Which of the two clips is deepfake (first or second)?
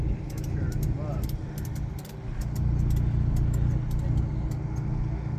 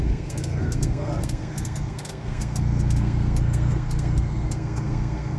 second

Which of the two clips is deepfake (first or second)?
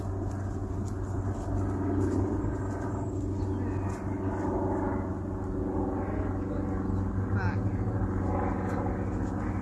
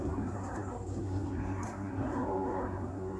second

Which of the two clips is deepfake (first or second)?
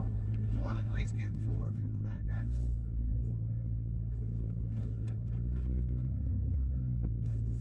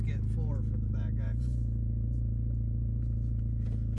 first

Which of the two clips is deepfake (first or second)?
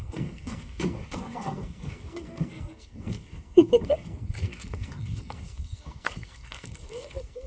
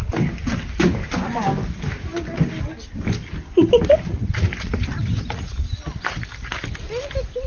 first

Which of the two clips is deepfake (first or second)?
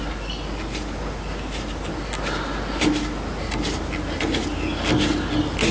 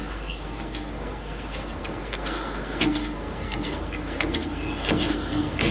second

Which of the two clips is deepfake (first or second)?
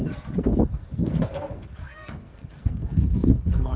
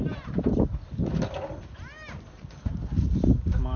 first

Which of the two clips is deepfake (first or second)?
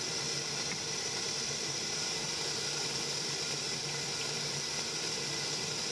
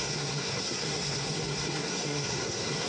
second